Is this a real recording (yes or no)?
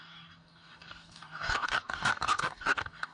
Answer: no